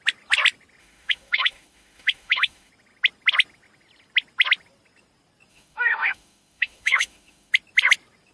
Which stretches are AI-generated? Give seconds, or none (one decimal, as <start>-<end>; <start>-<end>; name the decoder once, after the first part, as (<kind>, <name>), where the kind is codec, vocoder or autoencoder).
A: 0.8-2.7 (autoencoder, DAC-VAE); 5.5-7.5